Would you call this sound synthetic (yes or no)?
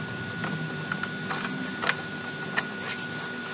no